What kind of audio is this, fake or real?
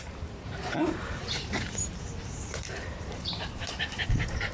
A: fake